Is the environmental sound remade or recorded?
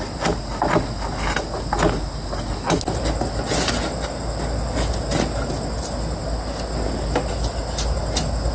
recorded